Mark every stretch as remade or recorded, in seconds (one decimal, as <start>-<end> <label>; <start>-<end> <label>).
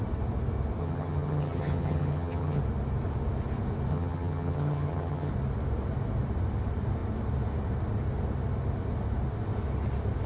0.0-0.8 recorded; 0.8-2.6 remade; 2.6-3.9 recorded; 3.9-5.3 remade; 5.3-10.3 recorded